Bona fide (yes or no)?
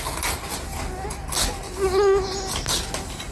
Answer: yes